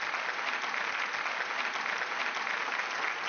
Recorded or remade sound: recorded